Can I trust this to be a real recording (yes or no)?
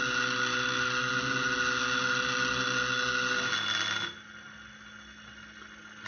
yes